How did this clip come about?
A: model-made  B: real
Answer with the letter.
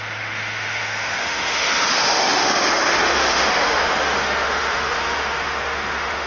A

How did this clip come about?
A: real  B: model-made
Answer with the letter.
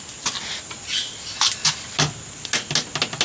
A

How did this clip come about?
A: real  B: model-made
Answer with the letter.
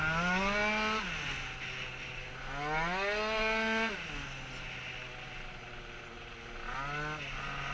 A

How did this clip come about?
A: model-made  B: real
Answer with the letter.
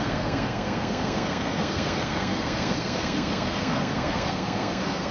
A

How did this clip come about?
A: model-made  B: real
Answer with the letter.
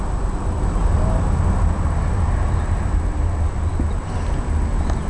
B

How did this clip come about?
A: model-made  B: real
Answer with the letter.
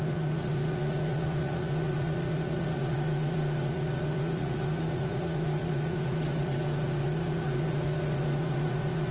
A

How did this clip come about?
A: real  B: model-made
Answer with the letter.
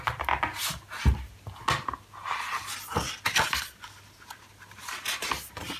A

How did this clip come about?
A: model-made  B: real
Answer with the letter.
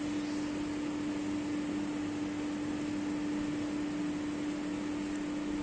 B